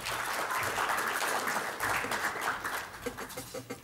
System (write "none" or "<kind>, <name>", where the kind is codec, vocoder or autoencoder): none